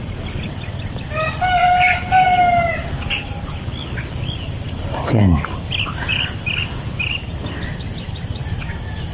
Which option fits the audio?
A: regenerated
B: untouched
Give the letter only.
B